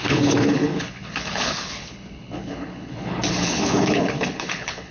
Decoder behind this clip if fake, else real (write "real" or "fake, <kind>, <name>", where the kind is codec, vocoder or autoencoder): fake, codec, HILCodec